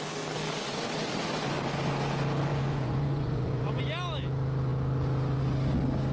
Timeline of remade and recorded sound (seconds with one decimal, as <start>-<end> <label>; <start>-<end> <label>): 0.0-2.5 recorded; 2.5-3.8 remade; 3.8-6.1 recorded